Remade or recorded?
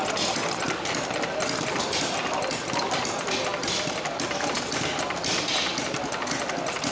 recorded